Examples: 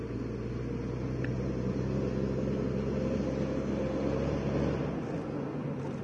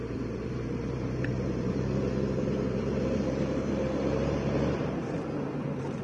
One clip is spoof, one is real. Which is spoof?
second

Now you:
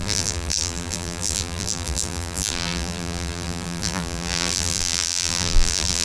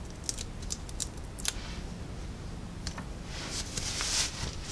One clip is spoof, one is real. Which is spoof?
first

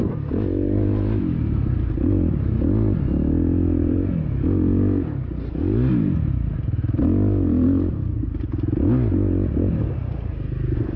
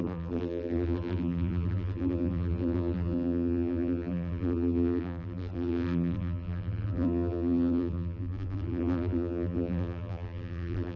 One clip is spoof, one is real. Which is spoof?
second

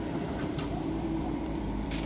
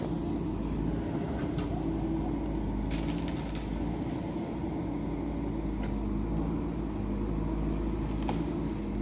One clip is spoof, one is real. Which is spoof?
first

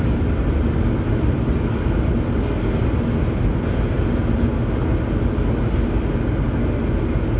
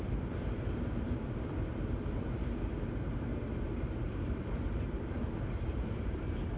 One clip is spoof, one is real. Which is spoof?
second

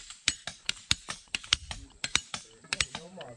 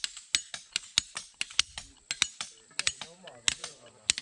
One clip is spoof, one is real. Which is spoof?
first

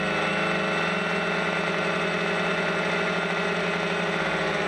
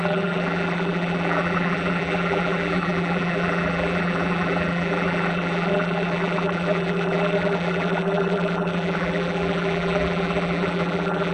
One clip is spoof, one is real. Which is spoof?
second